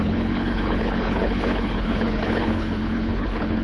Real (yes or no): no